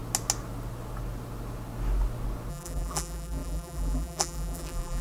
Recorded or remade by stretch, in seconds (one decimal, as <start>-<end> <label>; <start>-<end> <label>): 0.0-2.5 recorded; 2.5-5.0 remade